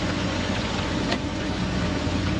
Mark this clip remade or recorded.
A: remade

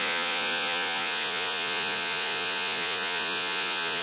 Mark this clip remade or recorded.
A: remade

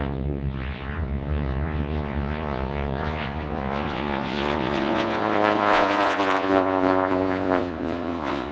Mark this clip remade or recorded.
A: remade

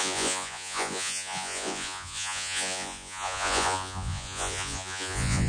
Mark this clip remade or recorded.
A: remade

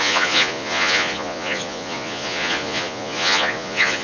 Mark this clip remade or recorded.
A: remade